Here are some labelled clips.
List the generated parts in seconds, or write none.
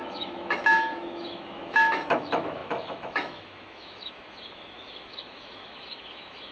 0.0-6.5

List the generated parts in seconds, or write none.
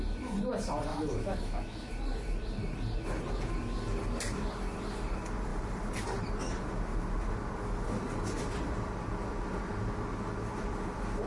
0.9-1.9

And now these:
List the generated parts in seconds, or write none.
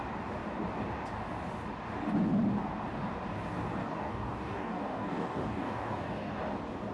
3.8-6.4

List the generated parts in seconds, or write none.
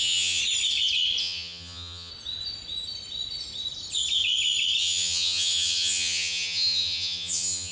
0.0-0.4; 1.2-2.1; 4.8-7.7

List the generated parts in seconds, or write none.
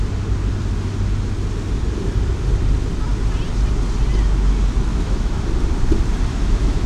4.9-5.4; 6.3-6.9